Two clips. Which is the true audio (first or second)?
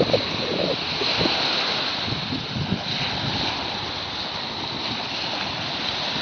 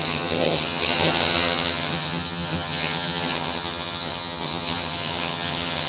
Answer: first